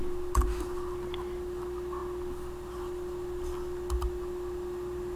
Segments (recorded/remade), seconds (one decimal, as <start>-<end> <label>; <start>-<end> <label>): 0.0-5.2 recorded